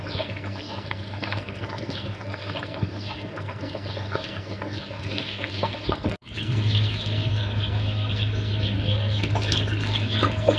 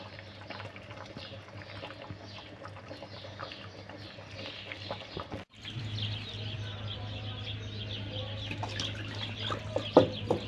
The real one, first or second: second